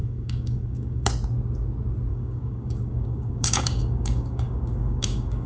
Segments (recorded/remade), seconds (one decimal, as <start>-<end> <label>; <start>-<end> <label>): 0.0-1.1 remade; 1.1-2.1 recorded; 2.1-5.5 remade

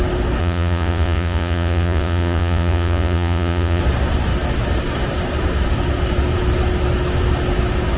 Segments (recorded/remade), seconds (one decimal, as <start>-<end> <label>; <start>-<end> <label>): 0.0-0.4 recorded; 0.4-3.8 remade; 3.8-8.0 recorded

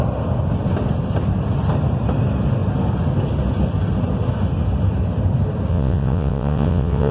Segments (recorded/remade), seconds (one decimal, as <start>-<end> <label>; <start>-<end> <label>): 0.0-5.7 recorded; 5.7-7.1 remade

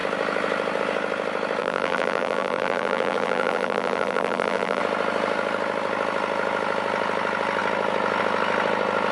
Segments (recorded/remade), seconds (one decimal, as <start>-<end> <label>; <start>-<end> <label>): 0.0-1.6 recorded; 1.6-4.8 remade; 4.8-9.1 recorded

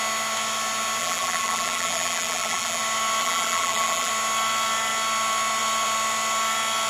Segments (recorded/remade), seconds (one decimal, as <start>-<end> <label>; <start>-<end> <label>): 0.0-1.0 recorded; 1.0-2.8 remade; 2.8-3.2 recorded; 3.2-4.1 remade; 4.1-6.9 recorded

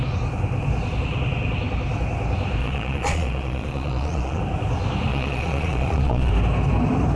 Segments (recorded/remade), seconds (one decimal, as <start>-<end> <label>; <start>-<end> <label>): 0.0-2.6 recorded; 2.6-4.4 remade; 4.4-5.1 recorded; 5.1-6.3 remade; 6.3-7.2 recorded

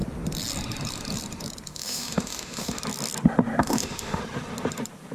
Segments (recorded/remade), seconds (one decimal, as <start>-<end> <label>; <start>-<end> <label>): 0.0-1.7 recorded; 1.7-2.8 remade; 2.8-3.6 recorded; 3.6-4.2 remade; 4.2-5.1 recorded

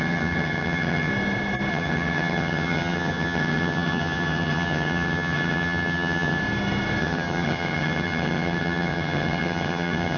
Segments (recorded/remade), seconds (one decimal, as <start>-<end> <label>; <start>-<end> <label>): 0.0-1.1 remade; 1.1-1.7 recorded; 1.7-6.4 remade; 6.4-7.0 recorded; 7.0-10.2 remade